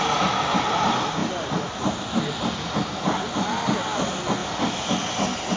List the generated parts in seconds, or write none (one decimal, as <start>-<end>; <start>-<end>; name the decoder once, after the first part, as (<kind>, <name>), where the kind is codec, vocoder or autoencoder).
4.4-4.9 (vocoder, BigVGAN v2)